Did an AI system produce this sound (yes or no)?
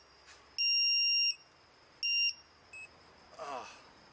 no